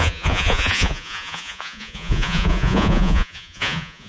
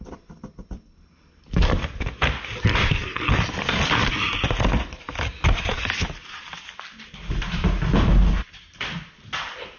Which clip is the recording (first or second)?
second